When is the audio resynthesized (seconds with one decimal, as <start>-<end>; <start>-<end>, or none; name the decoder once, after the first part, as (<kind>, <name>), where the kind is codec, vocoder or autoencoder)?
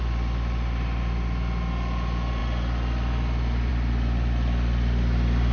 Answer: none